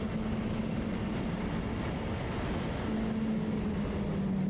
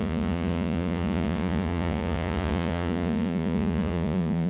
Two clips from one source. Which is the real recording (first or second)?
first